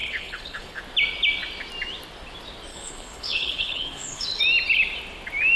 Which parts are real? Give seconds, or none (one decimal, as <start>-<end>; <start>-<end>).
0.8-2.7; 4.4-5.6